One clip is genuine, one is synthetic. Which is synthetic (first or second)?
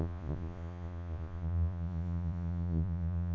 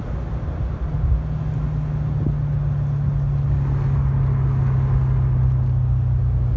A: first